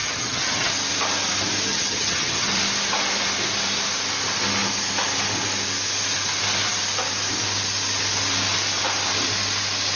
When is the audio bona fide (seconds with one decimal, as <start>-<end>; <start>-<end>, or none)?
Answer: 0.7-1.7; 2.5-10.0